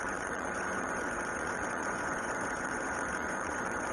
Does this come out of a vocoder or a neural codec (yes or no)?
yes